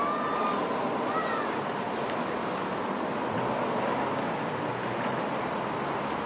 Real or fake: real